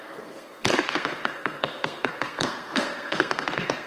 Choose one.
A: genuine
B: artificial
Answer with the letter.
B